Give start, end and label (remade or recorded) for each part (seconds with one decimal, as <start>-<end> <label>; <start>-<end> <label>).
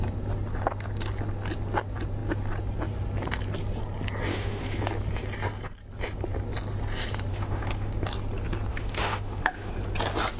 0.0-4.3 recorded; 4.3-4.8 remade; 4.8-7.3 recorded; 7.3-7.9 remade; 7.9-8.7 recorded; 8.7-9.7 remade; 9.7-10.4 recorded